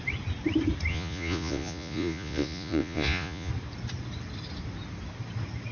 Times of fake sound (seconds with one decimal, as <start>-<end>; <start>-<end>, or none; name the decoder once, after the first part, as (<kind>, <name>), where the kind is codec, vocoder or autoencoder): 0.9-3.5 (vocoder, Vocos)